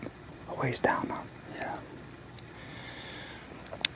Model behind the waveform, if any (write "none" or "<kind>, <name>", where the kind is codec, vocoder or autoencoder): none